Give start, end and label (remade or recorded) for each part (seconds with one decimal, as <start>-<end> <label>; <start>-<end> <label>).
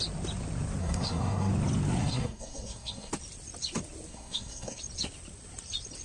0.0-0.8 recorded; 0.8-1.5 remade; 1.5-2.0 recorded; 2.0-3.1 remade; 3.1-4.1 recorded; 4.1-4.8 remade; 4.8-6.0 recorded